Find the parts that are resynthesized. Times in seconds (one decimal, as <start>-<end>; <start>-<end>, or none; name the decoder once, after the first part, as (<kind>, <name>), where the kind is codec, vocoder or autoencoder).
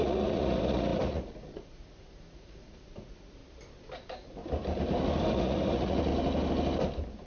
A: 0.0-3.4 (vocoder, Vocos); 5.3-6.1